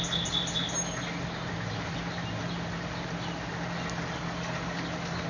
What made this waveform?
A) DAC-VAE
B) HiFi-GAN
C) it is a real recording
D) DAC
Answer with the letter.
C